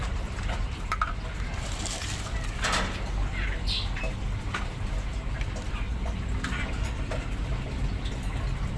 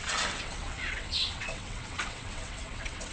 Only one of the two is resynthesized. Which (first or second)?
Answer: second